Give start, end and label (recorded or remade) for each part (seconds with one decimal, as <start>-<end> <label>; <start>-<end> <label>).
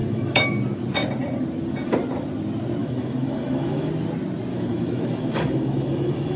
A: 0.0-0.5 remade; 0.5-2.8 recorded; 2.8-3.9 remade; 3.9-4.5 recorded; 4.5-6.4 remade